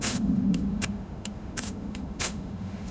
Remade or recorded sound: remade